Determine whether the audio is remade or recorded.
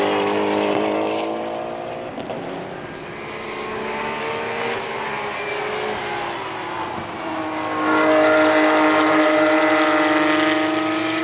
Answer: recorded